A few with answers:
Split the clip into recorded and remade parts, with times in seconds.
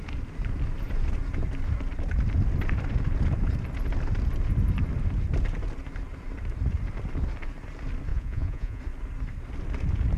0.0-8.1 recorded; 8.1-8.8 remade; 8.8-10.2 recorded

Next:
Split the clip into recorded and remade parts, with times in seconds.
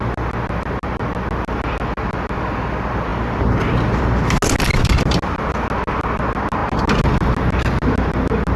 0.0-8.6 recorded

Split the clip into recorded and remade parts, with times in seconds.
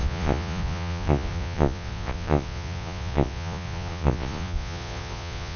0.0-5.6 remade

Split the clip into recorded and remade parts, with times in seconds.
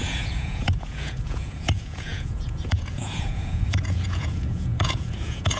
0.0-5.6 remade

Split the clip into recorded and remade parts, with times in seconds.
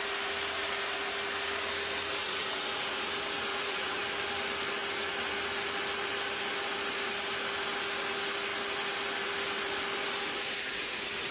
0.0-2.2 recorded; 2.2-3.0 remade; 3.0-3.5 recorded; 3.5-4.0 remade; 4.0-11.3 recorded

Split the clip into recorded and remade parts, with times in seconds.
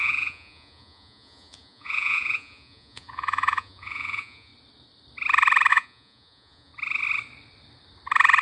0.0-4.5 remade; 4.5-5.7 recorded; 5.7-6.7 remade; 6.7-8.4 recorded